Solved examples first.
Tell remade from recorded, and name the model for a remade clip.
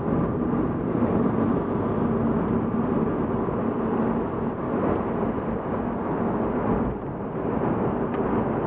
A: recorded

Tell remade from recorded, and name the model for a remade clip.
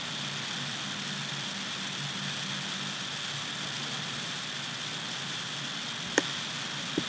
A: recorded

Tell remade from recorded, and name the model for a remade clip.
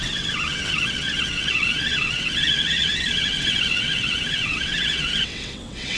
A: remade, vocoder, WaveNeXt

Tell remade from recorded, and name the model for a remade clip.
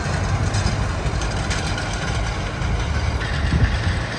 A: recorded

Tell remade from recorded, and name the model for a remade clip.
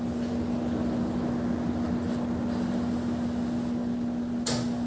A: recorded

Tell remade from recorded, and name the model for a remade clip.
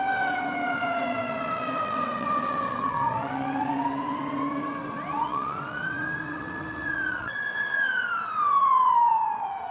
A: remade, vocoder, WaveNeXt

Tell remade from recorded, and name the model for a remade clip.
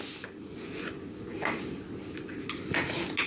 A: recorded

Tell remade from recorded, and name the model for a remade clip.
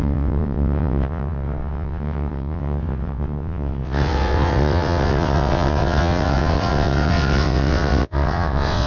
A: remade, vocoder, WaveNeXt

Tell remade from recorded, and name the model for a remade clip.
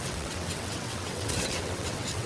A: remade, vocoder, WaveNeXt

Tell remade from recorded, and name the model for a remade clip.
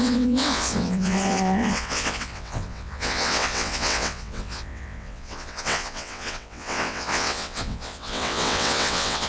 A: remade, vocoder, WaveNeXt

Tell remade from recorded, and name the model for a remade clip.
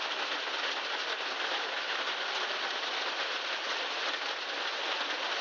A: recorded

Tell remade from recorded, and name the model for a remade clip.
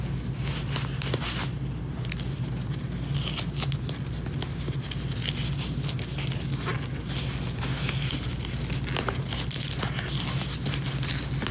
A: recorded